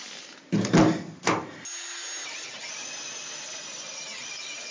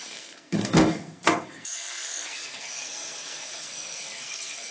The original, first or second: first